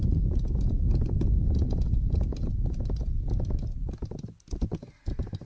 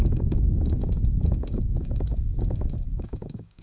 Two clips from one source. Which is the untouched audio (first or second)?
first